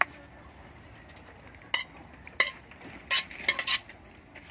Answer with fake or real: real